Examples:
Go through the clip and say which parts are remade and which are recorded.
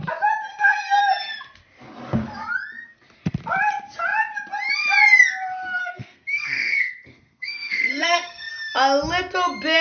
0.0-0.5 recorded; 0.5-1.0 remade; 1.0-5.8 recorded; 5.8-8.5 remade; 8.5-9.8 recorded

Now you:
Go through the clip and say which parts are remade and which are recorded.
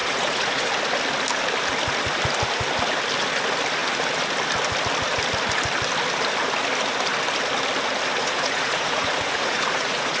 0.0-0.7 remade; 0.7-8.2 recorded; 8.2-10.2 remade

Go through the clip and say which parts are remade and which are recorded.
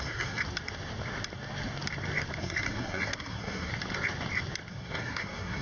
0.0-0.4 remade; 0.4-2.4 recorded; 2.4-3.7 remade; 3.7-4.7 recorded; 4.7-5.6 remade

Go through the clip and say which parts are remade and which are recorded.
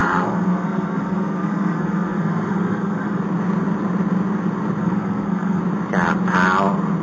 0.0-3.2 remade; 3.2-4.8 recorded; 4.8-5.6 remade; 5.6-7.0 recorded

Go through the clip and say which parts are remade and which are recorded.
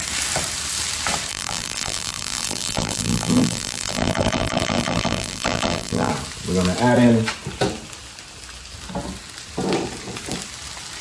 0.0-1.3 recorded; 1.3-6.1 remade; 6.1-11.0 recorded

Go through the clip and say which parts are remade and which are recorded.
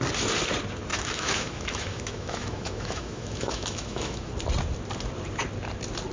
0.0-0.9 recorded; 0.9-4.3 remade; 4.3-6.1 recorded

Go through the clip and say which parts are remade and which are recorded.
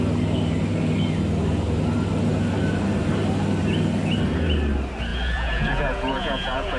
0.0-5.1 recorded; 5.1-6.8 remade